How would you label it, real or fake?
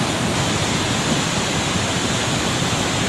real